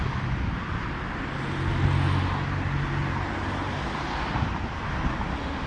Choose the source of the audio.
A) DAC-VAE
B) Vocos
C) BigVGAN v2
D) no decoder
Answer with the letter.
D